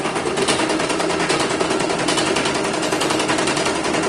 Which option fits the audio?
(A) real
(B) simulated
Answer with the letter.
A